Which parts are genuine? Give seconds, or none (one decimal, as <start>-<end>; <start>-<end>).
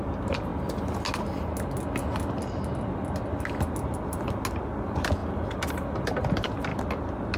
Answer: 0.5-4.6; 5.2-5.7; 6.7-7.4